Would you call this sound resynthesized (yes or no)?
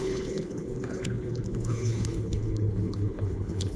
yes